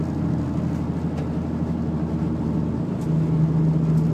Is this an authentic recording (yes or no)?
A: yes